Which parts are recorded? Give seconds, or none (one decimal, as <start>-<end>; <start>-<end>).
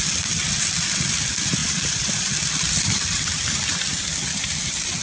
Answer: 0.0-1.6; 4.6-5.0